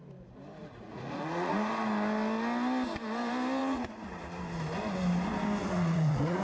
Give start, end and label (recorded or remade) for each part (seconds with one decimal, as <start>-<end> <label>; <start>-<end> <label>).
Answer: 0.0-0.6 recorded; 0.6-1.7 remade; 1.7-3.6 recorded; 3.6-4.4 remade; 4.4-5.6 recorded; 5.6-6.4 remade